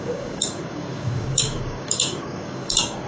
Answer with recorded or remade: remade